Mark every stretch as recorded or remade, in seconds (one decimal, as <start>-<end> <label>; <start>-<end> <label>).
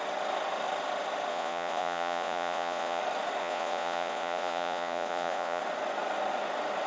0.0-1.3 recorded; 1.3-3.0 remade; 3.0-3.4 recorded; 3.4-5.6 remade; 5.6-6.9 recorded